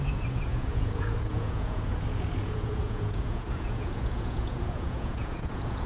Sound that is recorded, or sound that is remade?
remade